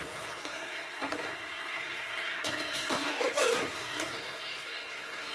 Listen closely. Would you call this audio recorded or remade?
remade